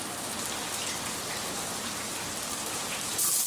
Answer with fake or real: real